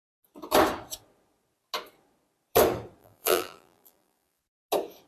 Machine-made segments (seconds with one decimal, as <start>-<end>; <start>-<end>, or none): 3.0-4.4